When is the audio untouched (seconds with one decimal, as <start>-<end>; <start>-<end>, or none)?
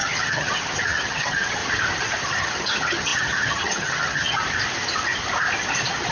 1.6-2.4; 4.4-6.1